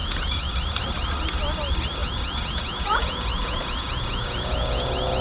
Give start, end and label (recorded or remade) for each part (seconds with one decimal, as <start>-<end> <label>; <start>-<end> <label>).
0.0-0.5 remade; 0.5-2.0 recorded; 2.0-5.2 remade